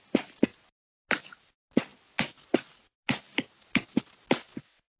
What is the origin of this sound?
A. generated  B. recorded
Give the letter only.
B